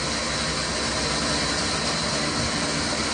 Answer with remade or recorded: recorded